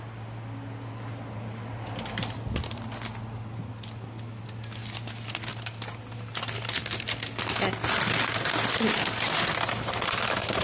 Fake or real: real